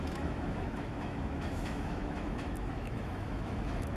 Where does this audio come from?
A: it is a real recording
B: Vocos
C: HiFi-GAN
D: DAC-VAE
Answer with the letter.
D